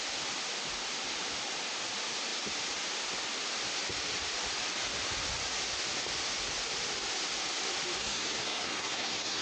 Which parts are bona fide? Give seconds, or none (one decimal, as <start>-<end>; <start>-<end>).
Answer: 0.0-8.0